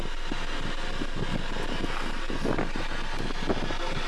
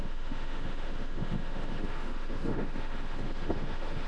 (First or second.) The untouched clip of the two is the first